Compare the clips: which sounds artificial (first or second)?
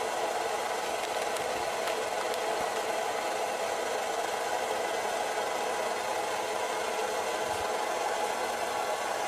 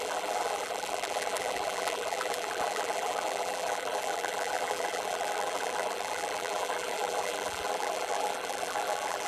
second